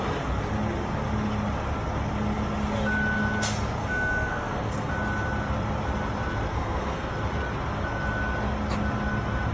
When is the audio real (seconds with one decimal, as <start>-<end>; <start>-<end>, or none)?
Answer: 0.0-3.8; 4.9-6.5; 7.1-9.5